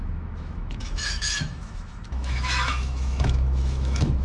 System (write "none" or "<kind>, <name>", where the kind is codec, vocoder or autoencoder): autoencoder, DAC-VAE